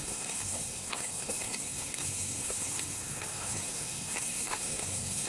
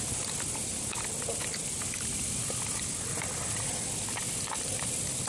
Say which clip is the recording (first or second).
second